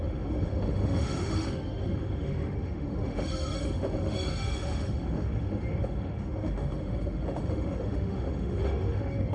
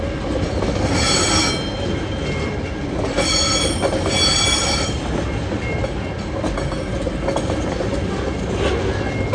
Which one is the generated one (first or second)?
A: first